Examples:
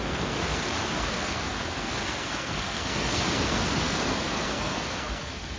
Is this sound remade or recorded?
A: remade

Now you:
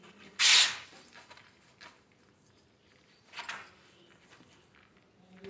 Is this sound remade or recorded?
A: recorded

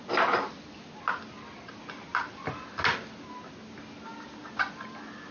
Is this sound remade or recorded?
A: recorded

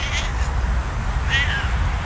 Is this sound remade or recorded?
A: recorded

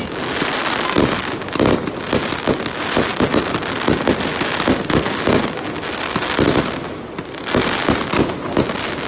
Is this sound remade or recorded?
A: recorded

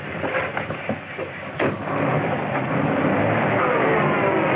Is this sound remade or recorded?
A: recorded